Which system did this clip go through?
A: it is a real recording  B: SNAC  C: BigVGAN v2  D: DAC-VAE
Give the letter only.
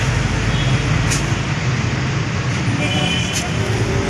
A